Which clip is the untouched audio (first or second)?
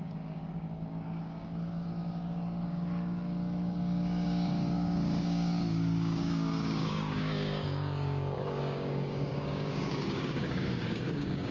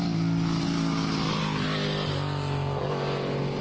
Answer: second